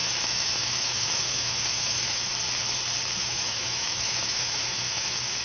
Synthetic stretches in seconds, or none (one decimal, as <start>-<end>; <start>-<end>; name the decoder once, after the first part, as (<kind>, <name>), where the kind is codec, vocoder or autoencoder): 0.0-2.3 (autoencoder, DAC-VAE); 3.2-5.4